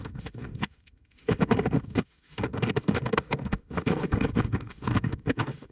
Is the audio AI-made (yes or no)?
yes